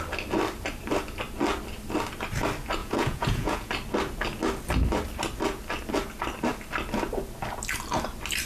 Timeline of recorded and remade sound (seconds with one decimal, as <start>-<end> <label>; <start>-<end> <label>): 0.0-2.8 recorded; 2.8-3.7 remade; 3.7-8.5 recorded